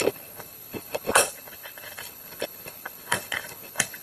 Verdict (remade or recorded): remade